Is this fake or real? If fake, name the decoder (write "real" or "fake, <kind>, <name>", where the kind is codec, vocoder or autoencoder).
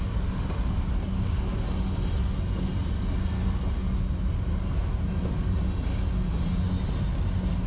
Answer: real